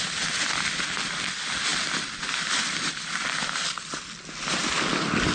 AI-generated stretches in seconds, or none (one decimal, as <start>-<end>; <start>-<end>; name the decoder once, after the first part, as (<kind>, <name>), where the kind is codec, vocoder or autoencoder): none